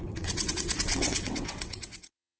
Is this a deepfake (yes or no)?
yes